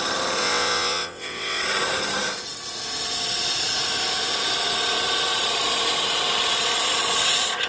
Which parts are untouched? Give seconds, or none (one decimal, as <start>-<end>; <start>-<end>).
0.0-0.4; 1.6-7.7

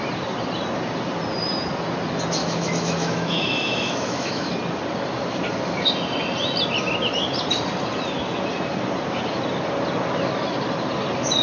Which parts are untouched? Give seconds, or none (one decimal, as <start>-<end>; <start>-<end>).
0.0-2.4; 4.5-11.4

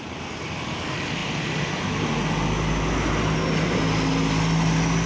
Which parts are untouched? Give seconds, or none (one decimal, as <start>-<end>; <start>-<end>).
0.0-5.1

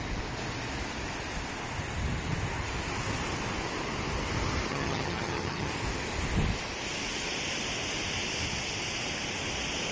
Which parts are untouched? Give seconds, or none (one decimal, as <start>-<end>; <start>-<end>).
0.0-4.7; 5.7-9.9